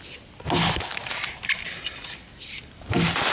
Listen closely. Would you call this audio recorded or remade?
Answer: recorded